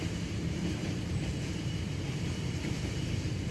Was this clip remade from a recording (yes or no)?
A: yes